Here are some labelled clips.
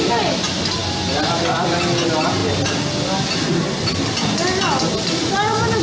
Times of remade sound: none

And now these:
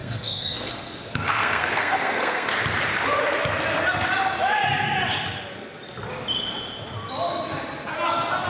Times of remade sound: 0.0-2.5 (codec, SNAC)

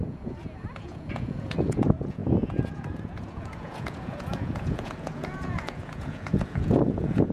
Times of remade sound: 0.0-7.3 (vocoder, Vocos)

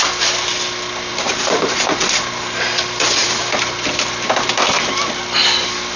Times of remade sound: 1.1-2.7 (vocoder, BigVGAN v2); 3.2-5.0

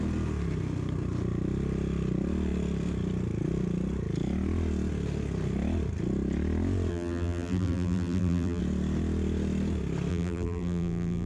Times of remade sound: 6.9-8.6 (vocoder, BigVGAN v2); 10.1-11.3

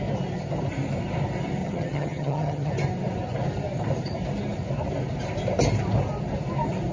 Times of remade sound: 1.6-2.7 (vocoder, HiFi-GAN)

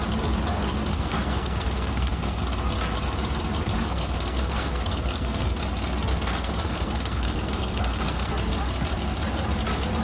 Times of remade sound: 0.9-2.4 (codec, SNAC); 3.8-5.6; 6.1-8.3